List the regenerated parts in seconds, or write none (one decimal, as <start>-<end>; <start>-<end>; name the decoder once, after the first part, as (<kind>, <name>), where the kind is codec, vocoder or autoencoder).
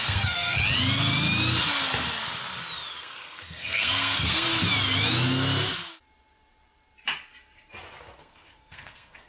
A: 0.0-0.6 (codec, SNAC); 3.0-4.5; 8.0-9.3